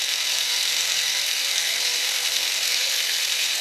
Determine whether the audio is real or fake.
fake